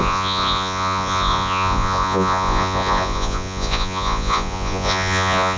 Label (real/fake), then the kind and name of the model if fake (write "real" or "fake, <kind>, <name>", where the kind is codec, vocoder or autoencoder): fake, vocoder, Vocos